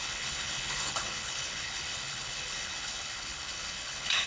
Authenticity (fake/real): fake